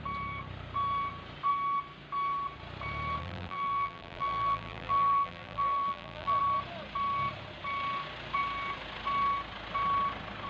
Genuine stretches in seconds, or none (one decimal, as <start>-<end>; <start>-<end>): 0.0-3.2; 6.4-10.5